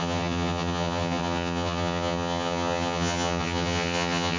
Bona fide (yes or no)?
no